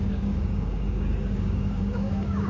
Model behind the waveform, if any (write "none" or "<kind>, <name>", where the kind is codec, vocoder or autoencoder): codec, DAC